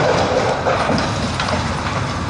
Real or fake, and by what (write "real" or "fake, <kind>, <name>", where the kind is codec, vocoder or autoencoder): real